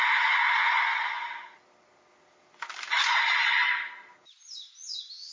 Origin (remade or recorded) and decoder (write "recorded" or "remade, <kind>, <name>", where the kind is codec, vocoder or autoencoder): recorded